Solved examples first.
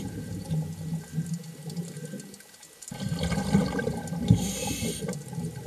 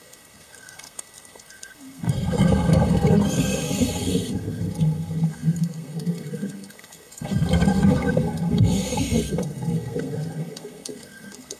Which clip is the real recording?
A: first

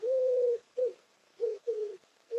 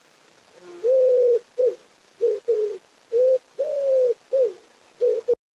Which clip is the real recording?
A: second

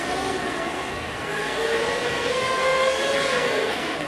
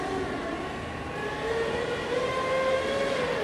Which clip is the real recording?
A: second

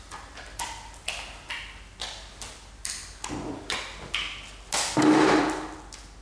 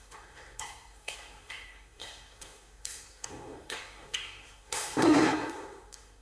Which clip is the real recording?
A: first